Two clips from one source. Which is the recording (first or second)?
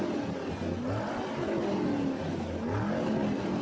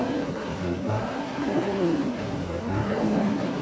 first